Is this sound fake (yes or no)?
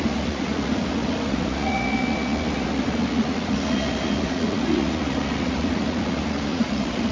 yes